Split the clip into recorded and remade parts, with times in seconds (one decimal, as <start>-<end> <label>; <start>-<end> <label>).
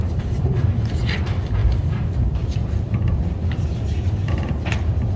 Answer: 0.0-5.2 recorded